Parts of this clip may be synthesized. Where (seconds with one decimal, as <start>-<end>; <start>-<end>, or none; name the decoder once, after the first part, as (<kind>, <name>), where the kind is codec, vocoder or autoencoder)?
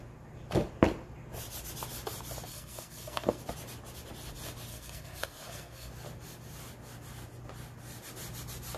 2.5-3.4 (codec, SNAC); 4.7-5.9